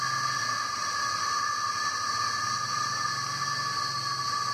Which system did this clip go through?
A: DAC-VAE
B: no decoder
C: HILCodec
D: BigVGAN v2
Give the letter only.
B